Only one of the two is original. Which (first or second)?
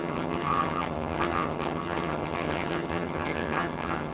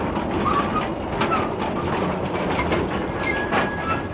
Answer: second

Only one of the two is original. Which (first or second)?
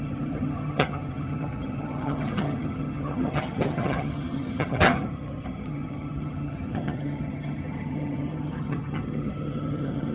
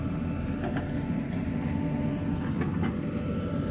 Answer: second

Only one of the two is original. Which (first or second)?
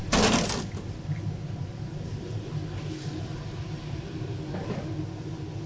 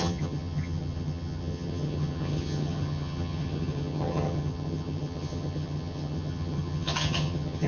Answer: first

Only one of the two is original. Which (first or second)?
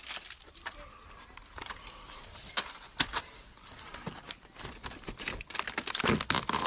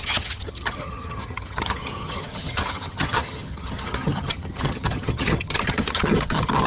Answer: first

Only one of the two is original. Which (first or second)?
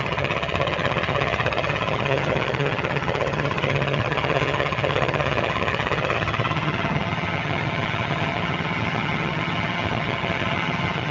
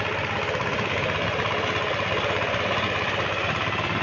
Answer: second